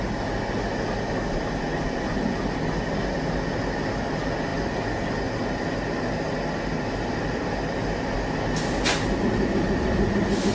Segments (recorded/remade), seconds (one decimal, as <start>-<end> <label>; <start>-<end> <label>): 0.0-10.5 recorded